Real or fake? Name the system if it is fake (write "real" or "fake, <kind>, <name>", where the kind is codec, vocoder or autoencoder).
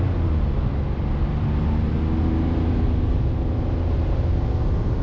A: real